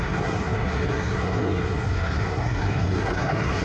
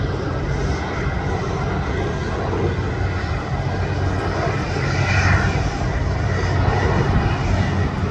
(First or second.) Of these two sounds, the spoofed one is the first